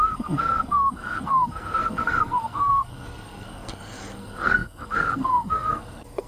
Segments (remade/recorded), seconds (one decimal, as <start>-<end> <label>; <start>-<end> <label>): 0.0-6.3 remade